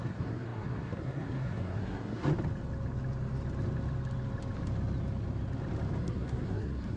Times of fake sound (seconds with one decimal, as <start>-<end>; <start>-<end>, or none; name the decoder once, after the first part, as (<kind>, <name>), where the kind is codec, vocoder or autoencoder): 0.0-2.3 (codec, SNAC); 6.0-7.0